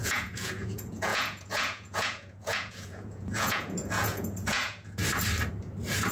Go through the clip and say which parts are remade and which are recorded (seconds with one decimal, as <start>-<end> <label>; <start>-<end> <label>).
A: 0.0-5.0 remade; 5.0-6.1 recorded